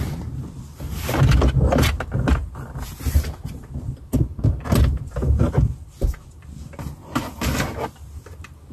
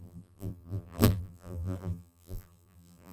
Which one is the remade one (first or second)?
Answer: second